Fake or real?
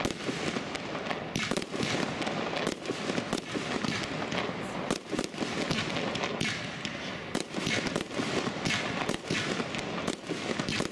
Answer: real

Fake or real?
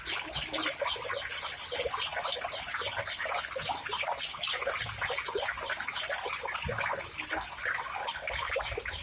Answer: real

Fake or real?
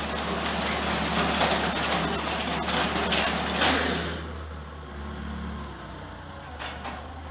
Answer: real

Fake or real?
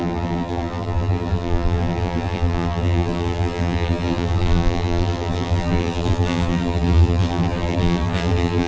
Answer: fake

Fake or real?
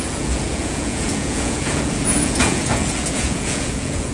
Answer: fake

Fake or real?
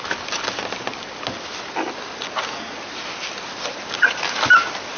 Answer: real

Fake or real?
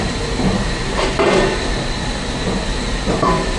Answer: fake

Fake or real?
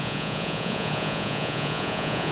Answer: fake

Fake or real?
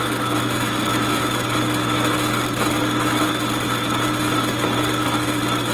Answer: real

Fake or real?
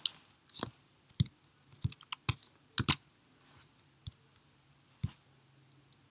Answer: real